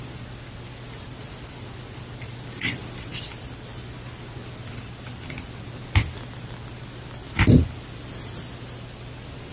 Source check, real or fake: real